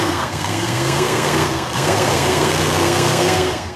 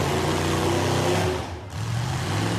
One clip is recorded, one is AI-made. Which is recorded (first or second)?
second